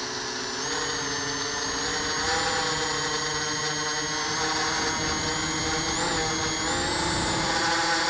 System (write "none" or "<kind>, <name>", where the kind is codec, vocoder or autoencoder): none